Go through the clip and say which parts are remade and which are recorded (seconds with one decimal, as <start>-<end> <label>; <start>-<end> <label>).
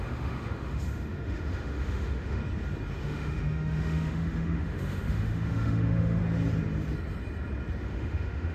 0.0-2.4 remade; 2.4-3.0 recorded; 3.0-6.2 remade; 6.2-7.8 recorded; 7.8-8.5 remade